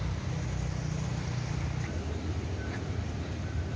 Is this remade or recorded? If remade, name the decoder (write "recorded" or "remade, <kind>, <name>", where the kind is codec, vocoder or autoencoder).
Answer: recorded